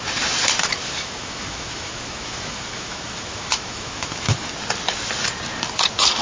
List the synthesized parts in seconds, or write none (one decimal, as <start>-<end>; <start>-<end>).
0.8-4.5